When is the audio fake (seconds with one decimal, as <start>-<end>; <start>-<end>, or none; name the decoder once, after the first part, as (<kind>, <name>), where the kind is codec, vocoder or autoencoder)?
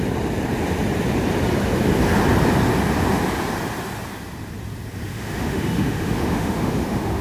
5.1-7.2 (autoencoder, DAC-VAE)